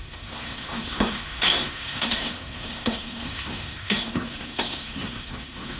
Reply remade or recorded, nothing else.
remade